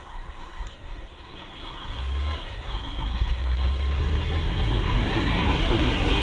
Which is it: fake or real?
fake